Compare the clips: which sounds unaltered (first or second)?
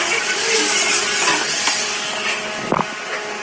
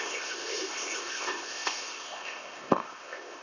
first